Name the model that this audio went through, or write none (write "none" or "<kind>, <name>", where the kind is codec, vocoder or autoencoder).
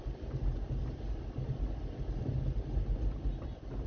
none